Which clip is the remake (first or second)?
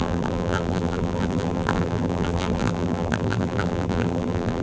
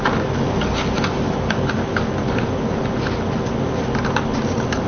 first